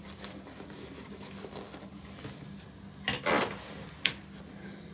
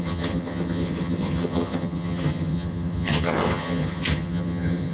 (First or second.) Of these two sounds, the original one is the first